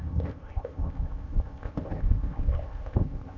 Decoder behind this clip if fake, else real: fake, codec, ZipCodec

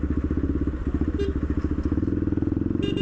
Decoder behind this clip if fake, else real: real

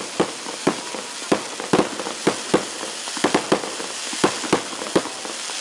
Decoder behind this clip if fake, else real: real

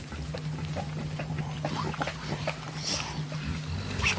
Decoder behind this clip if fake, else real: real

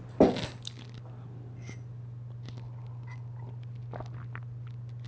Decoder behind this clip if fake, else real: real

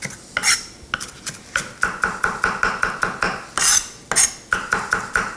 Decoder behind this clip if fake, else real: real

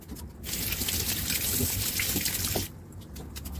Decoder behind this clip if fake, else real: real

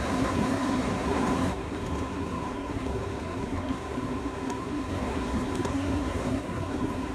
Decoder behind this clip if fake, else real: fake, codec, SNAC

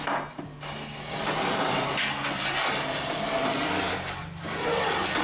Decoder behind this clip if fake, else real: real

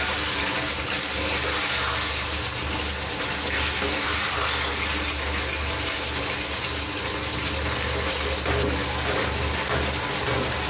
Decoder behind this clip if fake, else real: real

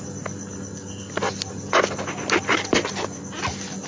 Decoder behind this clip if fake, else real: real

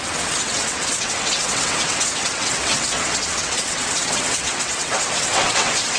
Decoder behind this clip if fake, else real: fake, vocoder, WaveNeXt